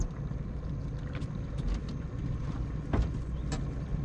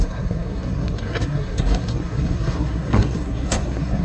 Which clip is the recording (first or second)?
first